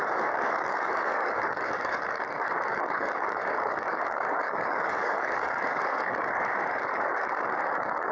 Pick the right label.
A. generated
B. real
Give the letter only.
A